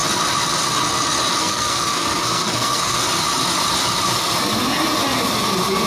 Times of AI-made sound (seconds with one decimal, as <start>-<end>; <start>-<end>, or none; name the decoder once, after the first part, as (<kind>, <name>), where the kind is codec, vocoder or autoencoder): 1.4-3.0 (codec, SNAC)